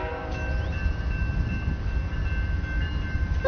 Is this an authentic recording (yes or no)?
yes